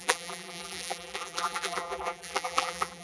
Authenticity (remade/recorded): remade